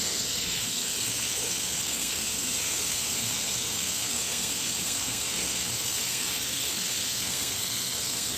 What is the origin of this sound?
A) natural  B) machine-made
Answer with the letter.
B